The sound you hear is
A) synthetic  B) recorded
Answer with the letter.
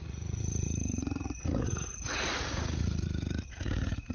A